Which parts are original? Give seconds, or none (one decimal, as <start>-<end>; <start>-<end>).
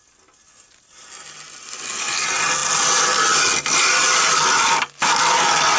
0.0-5.8